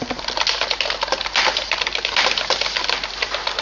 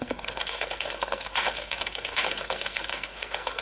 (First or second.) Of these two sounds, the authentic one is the first